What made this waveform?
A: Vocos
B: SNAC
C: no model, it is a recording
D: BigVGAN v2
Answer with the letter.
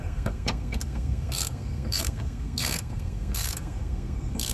B